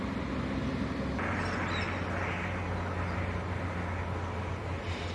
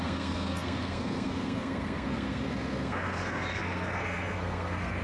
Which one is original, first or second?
first